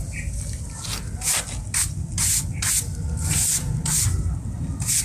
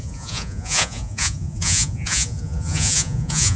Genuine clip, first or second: first